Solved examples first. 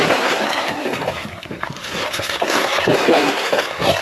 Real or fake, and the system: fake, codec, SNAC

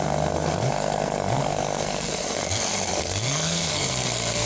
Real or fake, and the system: fake, codec, SNAC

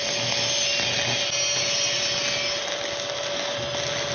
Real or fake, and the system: real